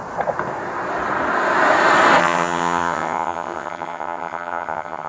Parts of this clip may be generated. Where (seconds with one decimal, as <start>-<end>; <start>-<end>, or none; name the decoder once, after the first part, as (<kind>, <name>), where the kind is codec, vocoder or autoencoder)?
2.2-5.1 (vocoder, HiFi-GAN)